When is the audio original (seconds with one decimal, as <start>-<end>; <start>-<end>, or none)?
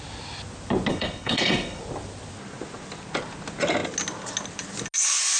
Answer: 0.0-0.9; 1.8-5.4